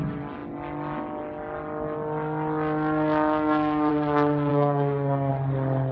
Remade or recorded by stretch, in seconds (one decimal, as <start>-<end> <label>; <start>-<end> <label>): 0.0-4.5 recorded; 4.5-5.3 remade; 5.3-5.9 recorded